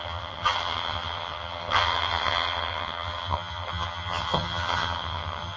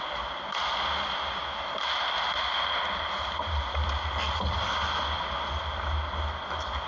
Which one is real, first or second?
second